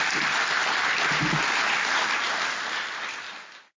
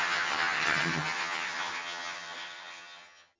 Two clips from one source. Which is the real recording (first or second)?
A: first